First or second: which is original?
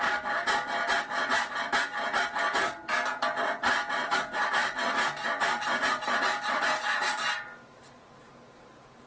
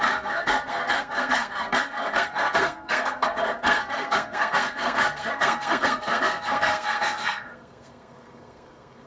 first